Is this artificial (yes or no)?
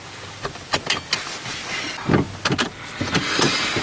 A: no